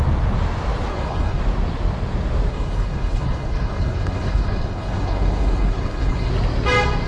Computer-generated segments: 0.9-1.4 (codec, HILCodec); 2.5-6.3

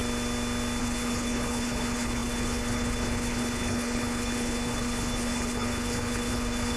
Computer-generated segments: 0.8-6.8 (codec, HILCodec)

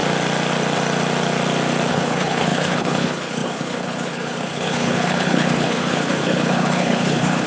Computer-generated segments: 1.9-7.5 (codec, HILCodec)